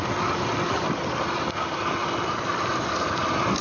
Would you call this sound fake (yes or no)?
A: no